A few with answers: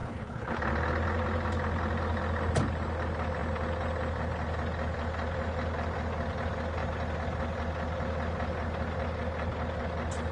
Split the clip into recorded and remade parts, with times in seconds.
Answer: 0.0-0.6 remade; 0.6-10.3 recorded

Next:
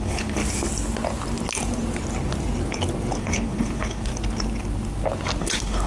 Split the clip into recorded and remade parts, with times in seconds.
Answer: 0.0-0.4 remade; 0.4-3.2 recorded; 3.2-4.1 remade; 4.1-5.4 recorded; 5.4-5.9 remade

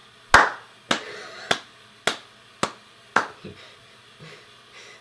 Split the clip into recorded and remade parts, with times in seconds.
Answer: 0.0-5.0 recorded